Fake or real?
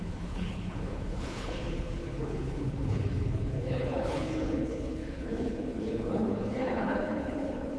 fake